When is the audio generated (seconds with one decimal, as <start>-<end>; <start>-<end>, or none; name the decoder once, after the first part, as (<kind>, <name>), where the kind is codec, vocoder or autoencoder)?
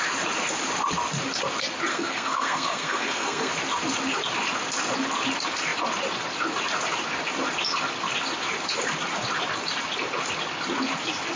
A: 1.9-3.5 (codec, SNAC)